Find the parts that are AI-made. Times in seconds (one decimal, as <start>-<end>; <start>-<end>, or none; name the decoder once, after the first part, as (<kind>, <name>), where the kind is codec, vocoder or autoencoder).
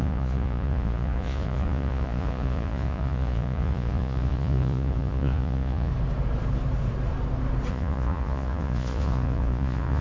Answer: 0.0-5.9 (vocoder, Vocos); 7.7-10.0